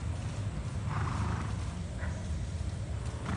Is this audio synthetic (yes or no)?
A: no